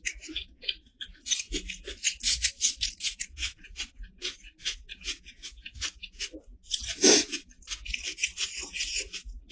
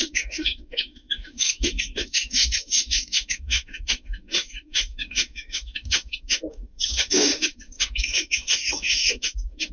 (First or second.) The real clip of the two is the first